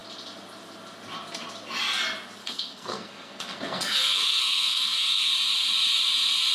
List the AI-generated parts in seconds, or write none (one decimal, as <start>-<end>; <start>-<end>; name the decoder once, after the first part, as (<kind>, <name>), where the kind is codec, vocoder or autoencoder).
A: 2.4-5.3 (codec, SNAC)